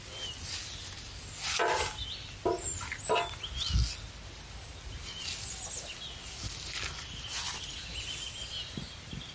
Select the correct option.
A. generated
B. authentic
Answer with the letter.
B